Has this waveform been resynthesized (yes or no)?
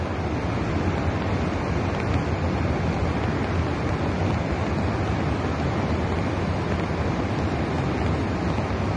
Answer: no